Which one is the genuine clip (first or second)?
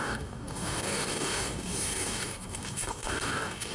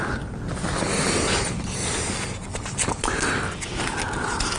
second